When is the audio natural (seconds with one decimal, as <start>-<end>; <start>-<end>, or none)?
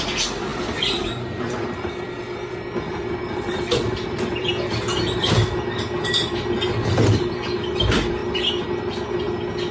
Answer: 0.5-1.0; 4.5-6.3; 8.2-9.7